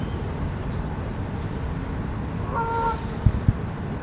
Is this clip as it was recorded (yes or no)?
yes